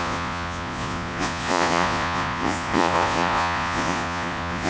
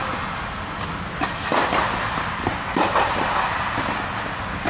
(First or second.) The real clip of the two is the second